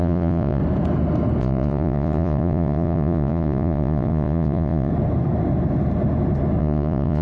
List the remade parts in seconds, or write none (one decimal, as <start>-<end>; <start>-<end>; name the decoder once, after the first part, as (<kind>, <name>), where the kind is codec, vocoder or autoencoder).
0.0-0.6 (vocoder, Vocos); 1.4-4.9; 6.6-7.2